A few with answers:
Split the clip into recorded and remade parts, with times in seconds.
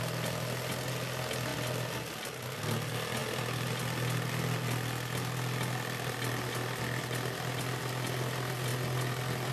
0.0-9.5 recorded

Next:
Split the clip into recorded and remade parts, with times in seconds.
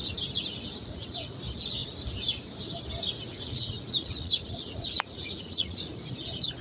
0.0-0.8 recorded; 0.8-1.4 remade; 1.4-3.3 recorded; 3.3-6.1 remade; 6.1-6.6 recorded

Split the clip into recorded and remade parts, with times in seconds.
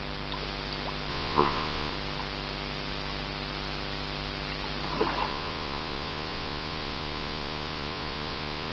0.0-1.1 recorded; 1.1-1.9 remade; 1.9-5.3 recorded; 5.3-8.7 remade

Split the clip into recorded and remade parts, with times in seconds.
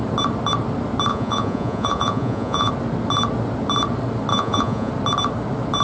0.0-1.1 recorded; 1.1-2.7 remade; 2.7-4.3 recorded; 4.3-4.9 remade; 4.9-5.8 recorded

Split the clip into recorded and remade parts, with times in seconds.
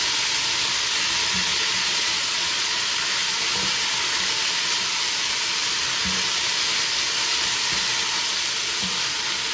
0.0-1.5 recorded; 1.5-2.8 remade; 2.8-9.5 recorded